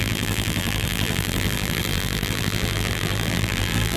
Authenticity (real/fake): fake